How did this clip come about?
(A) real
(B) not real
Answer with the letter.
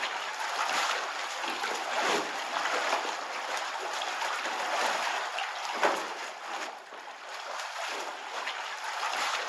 A